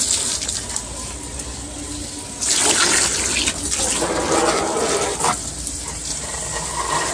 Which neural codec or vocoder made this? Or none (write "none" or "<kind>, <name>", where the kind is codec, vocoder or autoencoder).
none